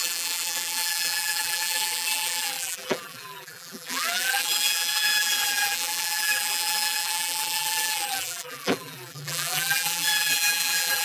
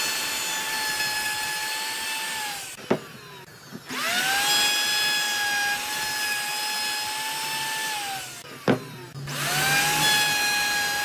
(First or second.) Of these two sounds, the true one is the second